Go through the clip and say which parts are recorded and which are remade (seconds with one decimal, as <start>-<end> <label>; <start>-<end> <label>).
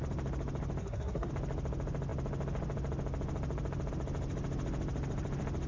0.0-0.8 recorded; 0.8-1.3 remade; 1.3-5.7 recorded